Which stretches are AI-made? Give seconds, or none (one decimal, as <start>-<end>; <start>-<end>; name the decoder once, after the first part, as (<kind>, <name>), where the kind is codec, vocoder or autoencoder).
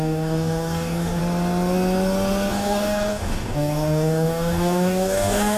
0.0-1.2 (codec, DAC); 2.5-5.6